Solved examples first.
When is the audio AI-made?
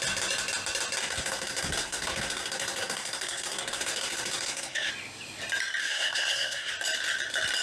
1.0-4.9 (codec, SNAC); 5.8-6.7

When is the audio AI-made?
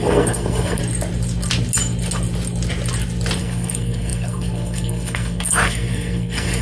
0.0-0.8 (codec, SNAC); 3.4-6.6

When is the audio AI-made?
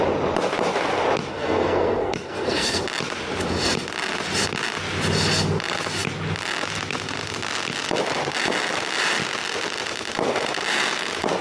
1.3-2.8 (codec, SNAC)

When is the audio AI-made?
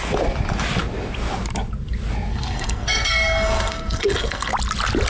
2.3-4.5 (codec, SNAC)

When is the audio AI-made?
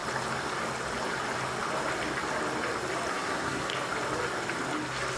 3.1-3.7 (codec, SNAC)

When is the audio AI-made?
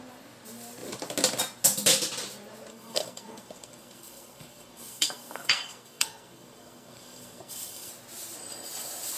2.7-7.9 (codec, SNAC)